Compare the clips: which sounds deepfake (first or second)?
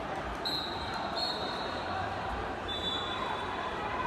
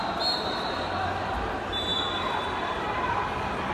first